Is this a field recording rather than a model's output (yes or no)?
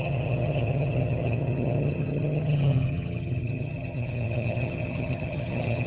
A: no